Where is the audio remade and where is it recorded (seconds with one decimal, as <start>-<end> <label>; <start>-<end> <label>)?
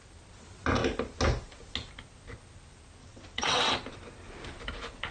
0.0-3.0 recorded; 3.0-3.7 remade; 3.7-5.1 recorded